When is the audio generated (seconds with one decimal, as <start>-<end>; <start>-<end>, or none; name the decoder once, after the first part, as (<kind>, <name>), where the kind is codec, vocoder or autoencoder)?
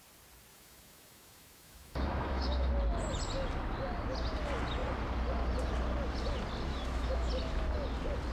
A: 0.5-2.7 (autoencoder, DAC-VAE); 6.7-7.3